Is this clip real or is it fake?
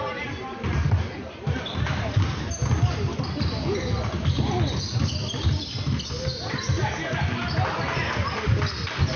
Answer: real